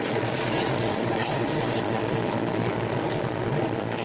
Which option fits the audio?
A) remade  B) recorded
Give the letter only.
A